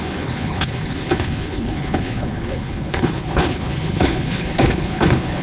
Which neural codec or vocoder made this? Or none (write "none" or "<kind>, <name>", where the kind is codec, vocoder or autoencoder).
codec, HILCodec